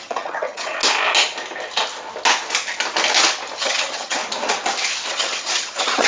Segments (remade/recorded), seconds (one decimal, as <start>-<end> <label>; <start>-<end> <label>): 0.0-0.8 remade; 0.8-3.6 recorded; 3.6-4.2 remade; 4.2-5.1 recorded; 5.1-6.1 remade